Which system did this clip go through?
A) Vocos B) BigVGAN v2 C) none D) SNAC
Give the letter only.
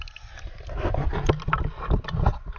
C